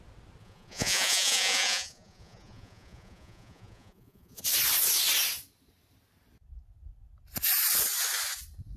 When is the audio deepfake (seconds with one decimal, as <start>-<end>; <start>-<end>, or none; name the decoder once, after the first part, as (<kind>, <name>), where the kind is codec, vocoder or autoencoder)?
0.4-4.4 (vocoder, Vocos)